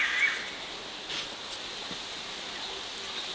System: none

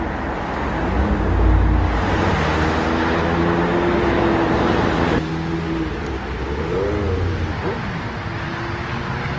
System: none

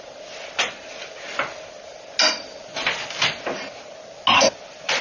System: none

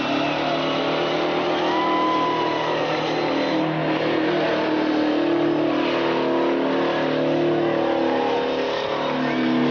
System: none